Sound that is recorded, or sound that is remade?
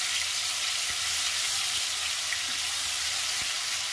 recorded